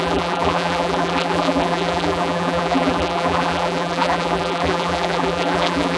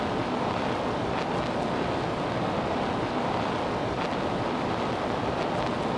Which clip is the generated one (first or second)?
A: first